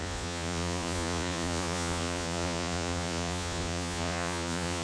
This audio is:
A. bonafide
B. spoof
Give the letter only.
B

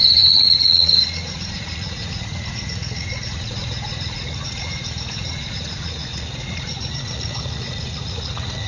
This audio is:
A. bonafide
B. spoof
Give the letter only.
B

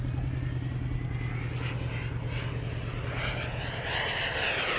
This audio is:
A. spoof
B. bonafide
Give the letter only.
B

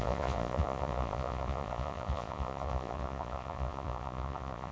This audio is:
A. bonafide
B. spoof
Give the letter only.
B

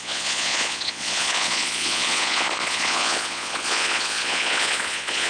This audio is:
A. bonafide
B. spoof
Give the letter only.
B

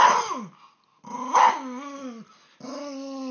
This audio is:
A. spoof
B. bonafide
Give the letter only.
B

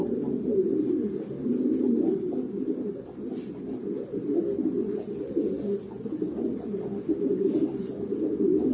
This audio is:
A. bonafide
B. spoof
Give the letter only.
A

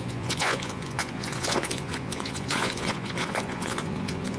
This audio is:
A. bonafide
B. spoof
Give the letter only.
B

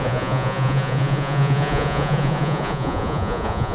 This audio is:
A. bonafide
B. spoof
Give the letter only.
B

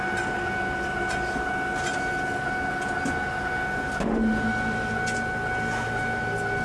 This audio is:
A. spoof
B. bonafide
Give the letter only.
B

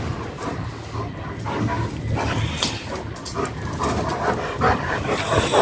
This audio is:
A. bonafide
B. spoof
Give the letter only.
A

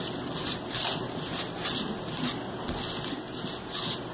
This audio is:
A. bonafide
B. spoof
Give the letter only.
A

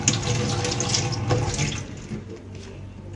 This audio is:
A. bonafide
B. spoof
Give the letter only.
A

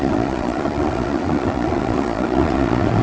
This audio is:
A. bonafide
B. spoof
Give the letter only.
B